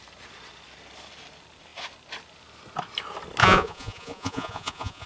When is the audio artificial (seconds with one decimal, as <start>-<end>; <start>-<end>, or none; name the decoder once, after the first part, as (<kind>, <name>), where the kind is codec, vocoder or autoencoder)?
3.4-5.1 (vocoder, Vocos)